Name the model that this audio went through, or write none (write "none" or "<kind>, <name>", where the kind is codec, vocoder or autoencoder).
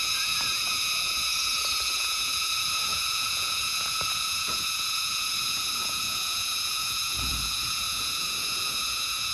vocoder, Vocos